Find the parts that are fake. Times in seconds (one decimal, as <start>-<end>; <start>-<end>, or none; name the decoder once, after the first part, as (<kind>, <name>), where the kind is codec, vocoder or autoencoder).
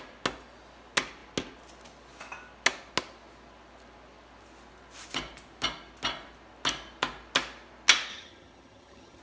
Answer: 8.1-9.2 (vocoder, HiFi-GAN)